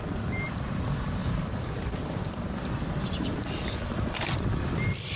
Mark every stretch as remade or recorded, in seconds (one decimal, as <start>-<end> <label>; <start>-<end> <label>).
0.0-1.2 recorded; 1.2-4.3 remade; 4.3-5.2 recorded